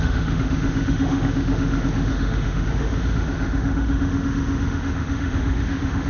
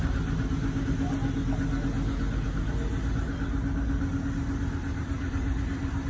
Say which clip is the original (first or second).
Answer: second